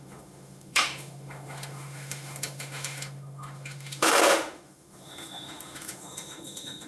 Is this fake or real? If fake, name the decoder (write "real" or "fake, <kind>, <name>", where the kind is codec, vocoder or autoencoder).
fake, autoencoder, DAC-VAE